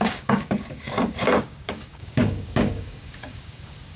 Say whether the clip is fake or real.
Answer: fake